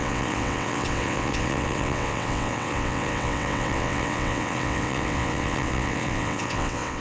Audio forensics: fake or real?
fake